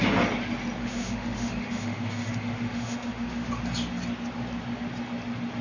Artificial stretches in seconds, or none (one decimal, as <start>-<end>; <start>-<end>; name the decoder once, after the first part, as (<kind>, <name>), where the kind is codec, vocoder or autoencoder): 0.8-3.5 (autoencoder, DAC-VAE)